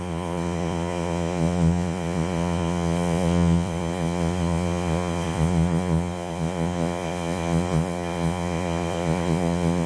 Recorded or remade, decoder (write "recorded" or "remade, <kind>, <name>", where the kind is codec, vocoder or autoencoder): remade, vocoder, Vocos